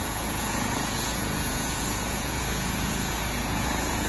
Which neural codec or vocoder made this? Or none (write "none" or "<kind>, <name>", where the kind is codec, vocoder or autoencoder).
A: vocoder, Vocos